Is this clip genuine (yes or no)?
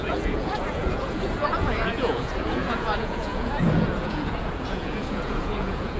no